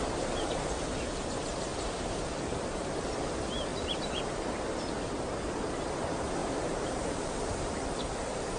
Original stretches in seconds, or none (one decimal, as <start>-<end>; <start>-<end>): 0.0-1.7; 3.1-3.7; 4.6-6.4; 7.4-8.6